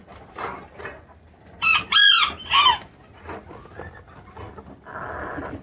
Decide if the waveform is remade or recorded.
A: recorded